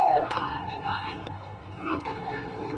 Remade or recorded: remade